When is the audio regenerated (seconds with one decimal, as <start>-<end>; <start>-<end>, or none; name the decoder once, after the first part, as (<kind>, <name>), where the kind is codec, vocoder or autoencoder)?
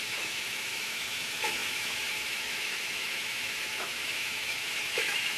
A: 0.0-5.4 (autoencoder, DAC-VAE)